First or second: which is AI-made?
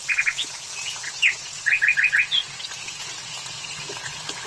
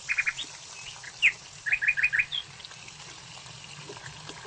first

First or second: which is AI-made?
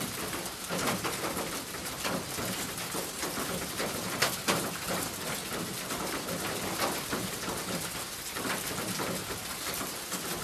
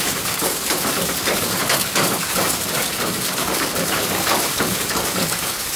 second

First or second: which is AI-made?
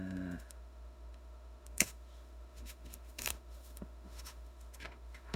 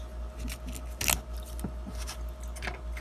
first